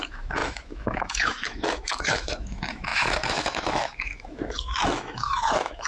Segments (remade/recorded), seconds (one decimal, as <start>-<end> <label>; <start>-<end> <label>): 0.0-5.9 remade